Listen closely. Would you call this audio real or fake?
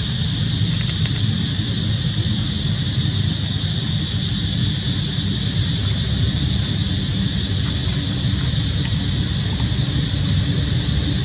real